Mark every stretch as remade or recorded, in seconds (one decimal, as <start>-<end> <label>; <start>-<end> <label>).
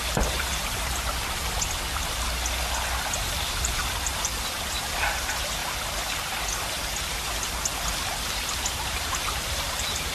0.0-1.4 remade; 1.4-3.3 recorded; 3.3-5.6 remade; 5.6-8.1 recorded; 8.1-10.1 remade